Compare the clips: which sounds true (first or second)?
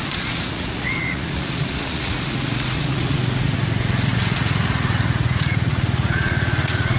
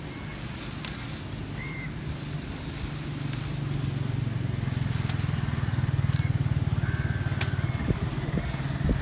second